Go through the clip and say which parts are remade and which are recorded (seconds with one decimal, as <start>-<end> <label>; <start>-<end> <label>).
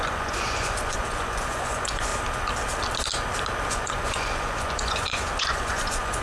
0.0-2.1 remade; 2.1-3.7 recorded; 3.7-6.2 remade